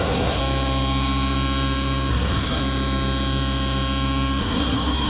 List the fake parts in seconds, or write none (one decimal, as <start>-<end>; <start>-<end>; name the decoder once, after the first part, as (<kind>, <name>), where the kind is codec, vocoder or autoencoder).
0.0-0.4 (codec, SNAC); 2.1-2.6; 4.4-5.1